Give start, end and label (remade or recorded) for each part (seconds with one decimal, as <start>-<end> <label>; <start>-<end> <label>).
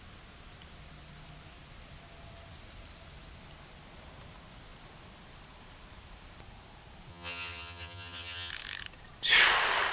0.0-7.1 recorded; 7.1-8.5 remade; 8.5-9.9 recorded